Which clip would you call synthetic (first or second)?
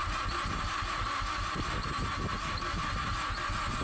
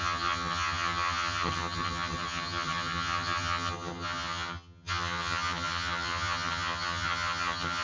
second